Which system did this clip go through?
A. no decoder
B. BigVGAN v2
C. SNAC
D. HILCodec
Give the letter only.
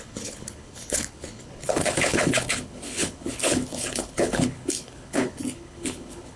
D